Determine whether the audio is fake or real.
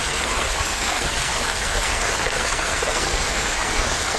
fake